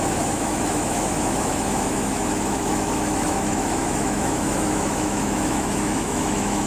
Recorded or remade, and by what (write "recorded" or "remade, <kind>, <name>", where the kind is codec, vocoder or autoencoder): remade, autoencoder, DAC-VAE